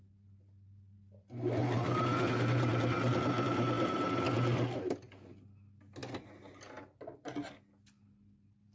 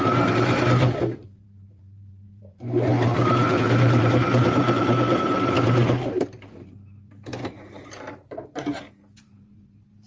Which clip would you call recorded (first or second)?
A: first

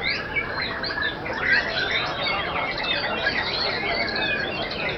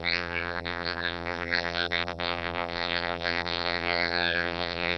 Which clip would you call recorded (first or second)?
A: first